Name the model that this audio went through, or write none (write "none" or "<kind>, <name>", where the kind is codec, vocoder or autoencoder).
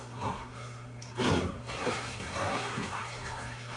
codec, SNAC